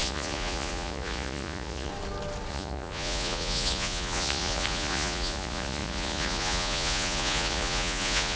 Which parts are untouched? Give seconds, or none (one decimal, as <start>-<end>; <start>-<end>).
1.9-2.5